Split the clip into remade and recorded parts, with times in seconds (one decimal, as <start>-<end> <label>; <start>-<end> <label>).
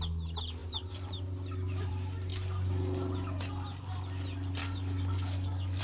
0.0-4.6 recorded; 4.6-5.8 remade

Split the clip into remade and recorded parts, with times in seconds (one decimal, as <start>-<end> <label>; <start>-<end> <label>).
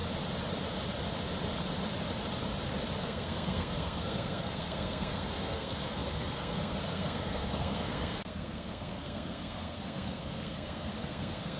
0.0-3.0 recorded; 3.0-11.6 remade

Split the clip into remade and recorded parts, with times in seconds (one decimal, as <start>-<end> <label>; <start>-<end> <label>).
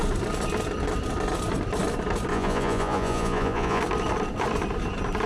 0.0-2.3 recorded; 2.3-3.8 remade; 3.8-5.3 recorded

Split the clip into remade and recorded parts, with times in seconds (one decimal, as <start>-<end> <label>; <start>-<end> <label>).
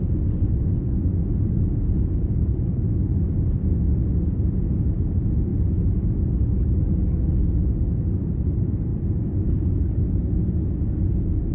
0.0-11.5 recorded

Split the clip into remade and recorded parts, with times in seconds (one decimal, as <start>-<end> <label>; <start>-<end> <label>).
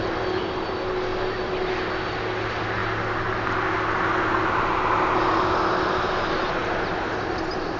0.0-7.8 recorded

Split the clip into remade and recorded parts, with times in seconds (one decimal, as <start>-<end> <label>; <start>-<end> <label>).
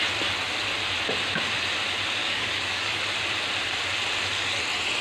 0.0-2.2 recorded; 2.2-3.0 remade; 3.0-5.0 recorded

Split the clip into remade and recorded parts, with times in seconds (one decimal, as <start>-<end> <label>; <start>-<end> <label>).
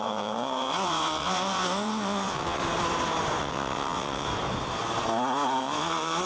0.0-2.6 remade; 2.6-3.4 recorded; 3.4-4.3 remade; 4.3-5.6 recorded; 5.6-6.3 remade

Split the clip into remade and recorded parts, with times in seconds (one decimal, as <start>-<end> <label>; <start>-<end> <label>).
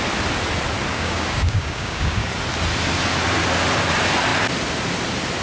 0.0-0.9 recorded; 0.9-2.3 remade; 2.3-5.4 recorded